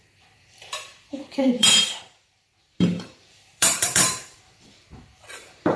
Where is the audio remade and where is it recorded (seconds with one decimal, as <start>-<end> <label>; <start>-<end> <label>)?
0.0-5.8 remade